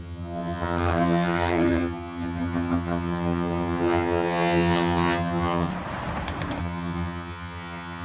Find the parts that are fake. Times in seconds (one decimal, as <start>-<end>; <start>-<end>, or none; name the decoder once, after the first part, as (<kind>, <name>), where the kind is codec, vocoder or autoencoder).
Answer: 0.0-5.7 (vocoder, HiFi-GAN); 6.6-8.0